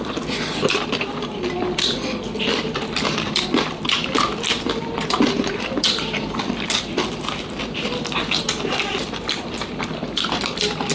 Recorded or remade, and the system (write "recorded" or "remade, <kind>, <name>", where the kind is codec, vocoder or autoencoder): remade, vocoder, BigVGAN v2